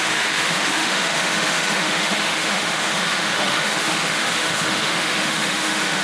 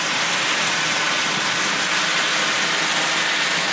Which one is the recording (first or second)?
second